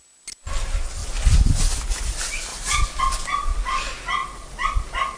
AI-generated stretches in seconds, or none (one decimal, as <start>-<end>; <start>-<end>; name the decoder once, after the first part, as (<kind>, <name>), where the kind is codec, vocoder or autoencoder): none